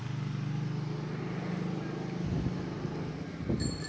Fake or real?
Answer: real